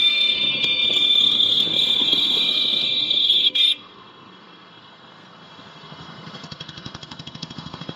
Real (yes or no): no